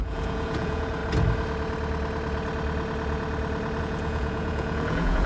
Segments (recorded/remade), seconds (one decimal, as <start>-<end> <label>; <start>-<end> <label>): 0.0-1.0 remade; 1.0-3.8 recorded; 3.8-5.3 remade